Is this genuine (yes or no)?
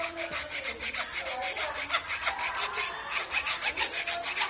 yes